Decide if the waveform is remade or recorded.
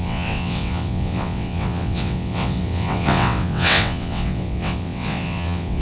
remade